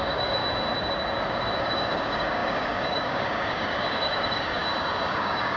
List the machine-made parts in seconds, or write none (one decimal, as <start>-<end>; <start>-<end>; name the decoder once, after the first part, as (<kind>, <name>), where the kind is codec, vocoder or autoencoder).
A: 0.0-0.4 (codec, DAC); 1.6-4.6; 5.1-5.6